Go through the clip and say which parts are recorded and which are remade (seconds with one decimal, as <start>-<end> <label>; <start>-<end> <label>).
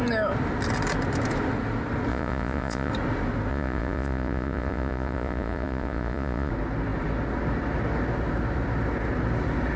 0.0-2.1 recorded; 2.1-2.9 remade; 2.9-3.5 recorded; 3.5-6.5 remade; 6.5-9.8 recorded